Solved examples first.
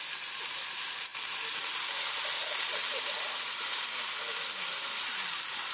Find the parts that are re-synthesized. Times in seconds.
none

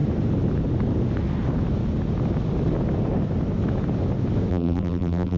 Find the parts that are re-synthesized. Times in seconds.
4.5-5.4

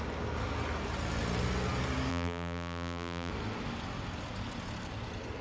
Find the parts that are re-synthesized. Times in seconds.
2.1-3.3

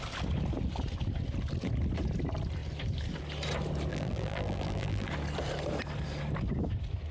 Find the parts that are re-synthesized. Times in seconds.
3.9-5.1

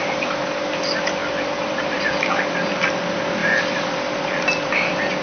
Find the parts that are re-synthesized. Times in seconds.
1.2-2.9; 3.4-5.2